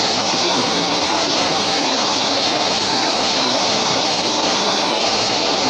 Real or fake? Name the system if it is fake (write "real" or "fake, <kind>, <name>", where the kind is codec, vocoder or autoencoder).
fake, codec, SNAC